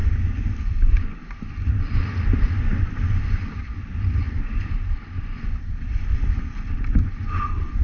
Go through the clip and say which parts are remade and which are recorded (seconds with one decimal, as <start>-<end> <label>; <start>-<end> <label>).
0.0-7.8 recorded